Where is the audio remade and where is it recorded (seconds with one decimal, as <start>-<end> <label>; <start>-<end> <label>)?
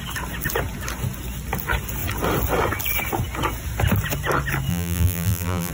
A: 0.0-4.7 recorded; 4.7-5.7 remade